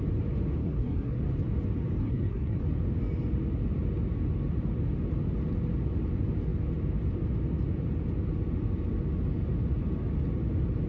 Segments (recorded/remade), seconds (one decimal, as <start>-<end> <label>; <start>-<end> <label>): 0.0-0.6 recorded; 0.6-1.2 remade; 1.2-2.0 recorded; 2.0-2.6 remade; 2.6-10.9 recorded